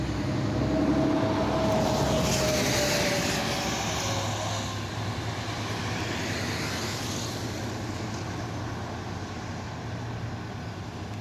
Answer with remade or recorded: recorded